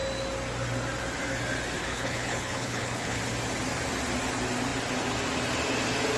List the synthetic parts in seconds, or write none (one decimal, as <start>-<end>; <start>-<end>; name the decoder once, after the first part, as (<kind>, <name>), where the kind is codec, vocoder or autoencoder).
1.8-3.2 (codec, HILCodec)